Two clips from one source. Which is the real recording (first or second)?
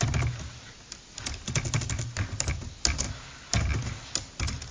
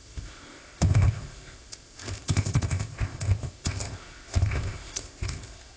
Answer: first